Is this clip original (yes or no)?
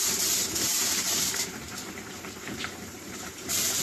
no